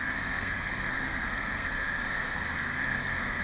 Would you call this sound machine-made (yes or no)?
yes